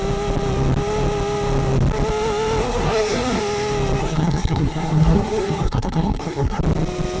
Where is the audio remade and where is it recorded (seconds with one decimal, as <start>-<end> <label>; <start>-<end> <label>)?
0.0-2.6 recorded; 2.6-3.4 remade; 3.4-4.0 recorded; 4.0-6.6 remade; 6.6-7.2 recorded